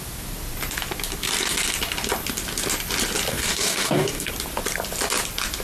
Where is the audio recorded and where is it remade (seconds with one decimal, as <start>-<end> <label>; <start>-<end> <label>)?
0.0-3.3 recorded; 3.3-4.3 remade; 4.3-5.6 recorded